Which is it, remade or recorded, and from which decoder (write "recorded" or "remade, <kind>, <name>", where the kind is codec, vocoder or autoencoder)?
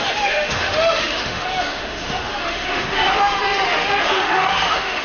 remade, autoencoder, DAC-VAE